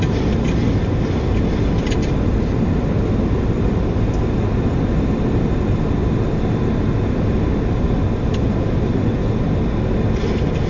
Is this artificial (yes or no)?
no